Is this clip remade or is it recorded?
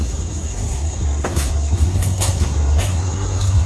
remade